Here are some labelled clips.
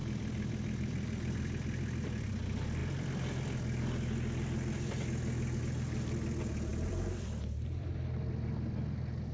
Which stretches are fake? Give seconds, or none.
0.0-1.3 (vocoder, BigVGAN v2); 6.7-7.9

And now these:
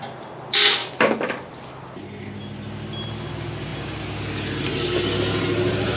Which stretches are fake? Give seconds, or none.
0.8-1.9 (vocoder, BigVGAN v2)